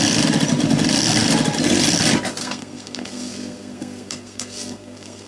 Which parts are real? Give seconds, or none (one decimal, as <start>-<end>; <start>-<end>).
0.0-2.4